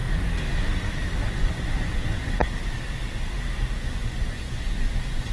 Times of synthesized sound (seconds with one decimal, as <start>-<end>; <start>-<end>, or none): 1.3-2.4; 3.8-5.3